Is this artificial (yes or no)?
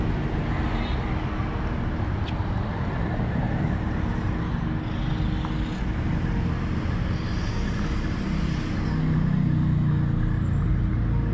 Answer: no